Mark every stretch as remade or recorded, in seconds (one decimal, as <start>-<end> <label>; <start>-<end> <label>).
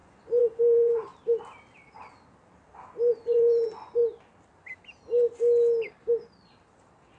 0.0-1.1 remade; 1.1-3.1 recorded; 3.1-4.0 remade; 4.0-7.2 recorded